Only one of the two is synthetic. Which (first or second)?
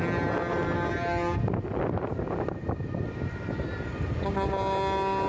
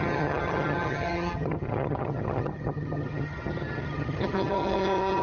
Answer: second